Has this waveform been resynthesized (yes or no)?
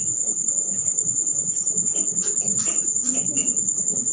yes